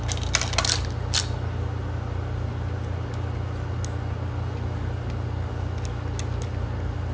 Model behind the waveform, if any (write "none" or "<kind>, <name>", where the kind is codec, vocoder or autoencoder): none